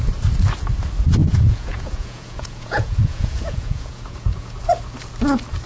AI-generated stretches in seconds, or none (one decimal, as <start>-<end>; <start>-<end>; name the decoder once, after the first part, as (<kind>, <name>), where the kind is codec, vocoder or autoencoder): 1.2-4.6 (vocoder, Vocos)